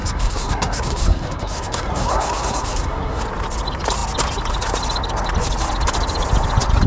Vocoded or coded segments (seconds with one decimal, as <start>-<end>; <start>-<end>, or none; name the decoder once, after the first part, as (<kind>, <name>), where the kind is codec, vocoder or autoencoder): 0.0-3.2 (codec, SNAC)